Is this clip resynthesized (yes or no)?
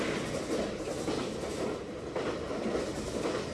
no